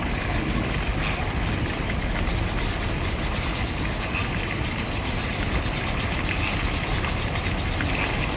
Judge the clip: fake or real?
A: real